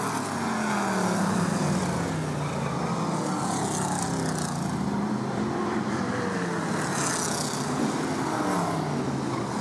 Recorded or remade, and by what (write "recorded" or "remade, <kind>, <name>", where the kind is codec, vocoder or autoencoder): recorded